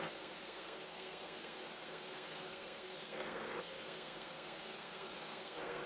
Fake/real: fake